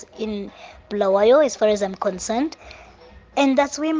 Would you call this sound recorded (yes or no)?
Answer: yes